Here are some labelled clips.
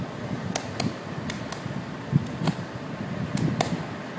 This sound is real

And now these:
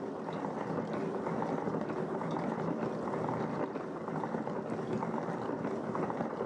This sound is real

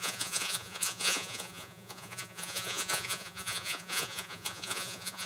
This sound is fake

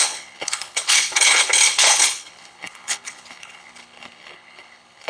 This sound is fake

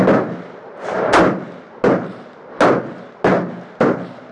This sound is real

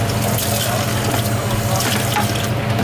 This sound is real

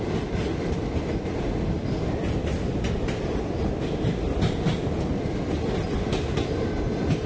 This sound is real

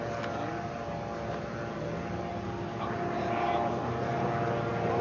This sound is real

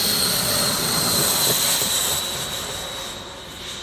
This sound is real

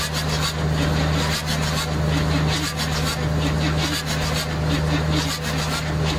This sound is real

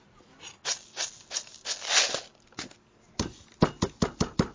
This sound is real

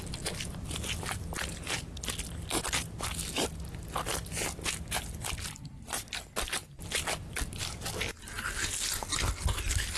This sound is real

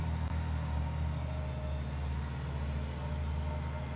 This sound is real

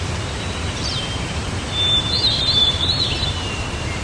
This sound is fake